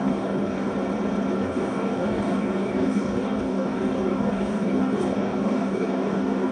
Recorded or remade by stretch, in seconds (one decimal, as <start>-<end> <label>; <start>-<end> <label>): 0.0-0.7 remade; 0.7-1.4 recorded; 1.4-6.5 remade